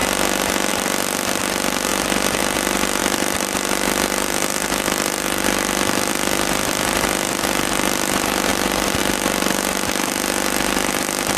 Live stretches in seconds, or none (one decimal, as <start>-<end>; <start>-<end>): 0.0-1.9; 2.4-3.0; 6.1-8.5; 9.0-11.4